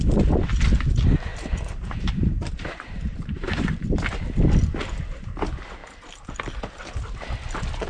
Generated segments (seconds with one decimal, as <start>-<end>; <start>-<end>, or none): 1.3-3.9